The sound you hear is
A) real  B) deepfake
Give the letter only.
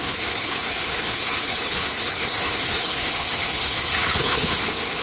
B